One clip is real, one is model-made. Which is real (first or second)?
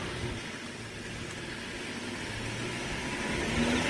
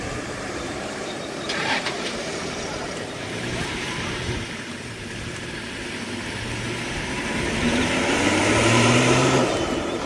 first